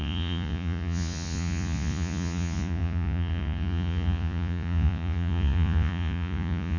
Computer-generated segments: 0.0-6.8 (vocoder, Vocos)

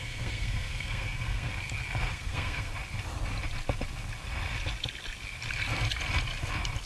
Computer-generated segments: 0.0-1.5 (codec, SNAC); 2.1-2.7

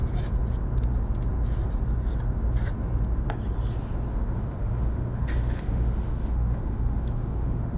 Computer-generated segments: 4.1-7.8 (autoencoder, DAC-VAE)